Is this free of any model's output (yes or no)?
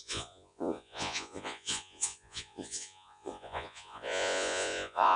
no